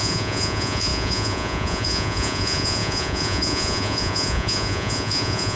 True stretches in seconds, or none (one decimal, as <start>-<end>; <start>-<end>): none